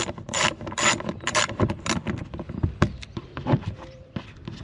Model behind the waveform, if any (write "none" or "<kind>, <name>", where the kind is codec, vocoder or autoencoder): vocoder, BigVGAN v2